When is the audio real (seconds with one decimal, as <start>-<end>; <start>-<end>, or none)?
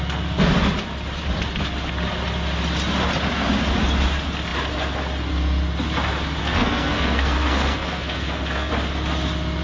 0.0-6.4; 8.7-9.6